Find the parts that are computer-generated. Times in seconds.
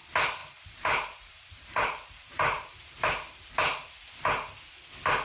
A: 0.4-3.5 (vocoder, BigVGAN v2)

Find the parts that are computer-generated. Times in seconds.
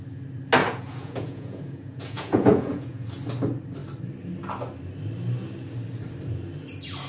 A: 0.6-3.1 (vocoder, Vocos)